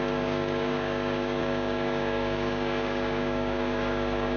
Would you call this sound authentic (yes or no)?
no